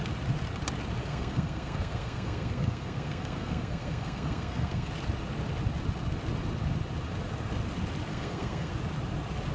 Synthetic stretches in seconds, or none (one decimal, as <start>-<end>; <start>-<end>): 1.0-4.9; 8.1-8.7

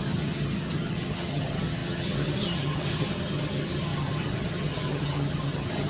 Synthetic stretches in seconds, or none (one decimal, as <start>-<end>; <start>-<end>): 0.0-5.9

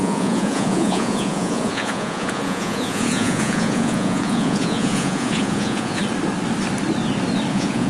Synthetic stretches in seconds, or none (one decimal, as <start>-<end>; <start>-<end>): 0.0-6.0; 7.5-7.9

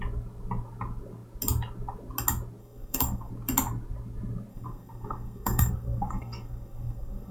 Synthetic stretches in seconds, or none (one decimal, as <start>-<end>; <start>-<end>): 2.6-3.3; 4.5-7.3